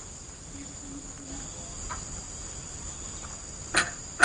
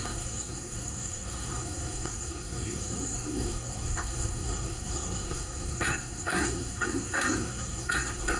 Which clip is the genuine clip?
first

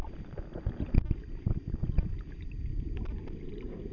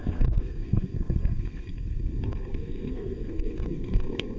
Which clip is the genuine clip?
first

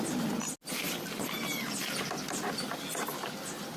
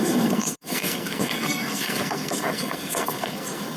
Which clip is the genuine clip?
first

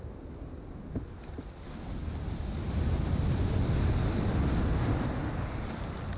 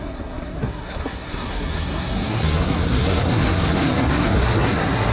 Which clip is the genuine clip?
first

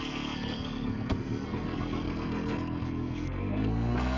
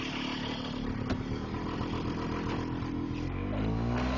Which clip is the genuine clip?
second